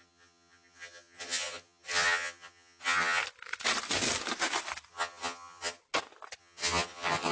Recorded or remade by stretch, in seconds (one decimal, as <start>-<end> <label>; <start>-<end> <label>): 0.0-3.2 remade; 3.2-4.9 recorded; 4.9-5.8 remade; 5.8-6.4 recorded; 6.4-7.3 remade